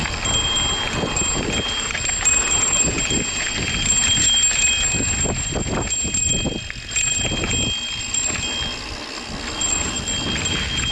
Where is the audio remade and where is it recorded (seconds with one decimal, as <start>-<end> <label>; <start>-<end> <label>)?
0.0-10.9 recorded